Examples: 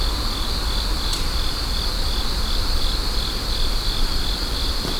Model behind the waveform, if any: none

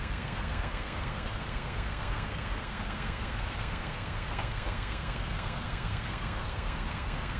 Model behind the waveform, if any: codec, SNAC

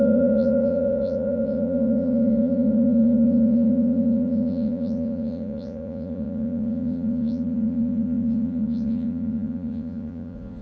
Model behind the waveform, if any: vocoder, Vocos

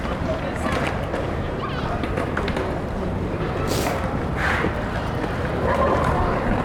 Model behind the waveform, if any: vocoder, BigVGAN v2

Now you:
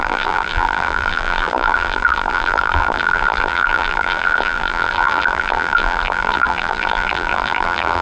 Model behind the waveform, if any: vocoder, BigVGAN v2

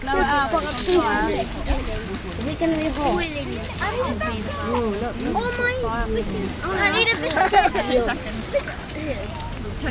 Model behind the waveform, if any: none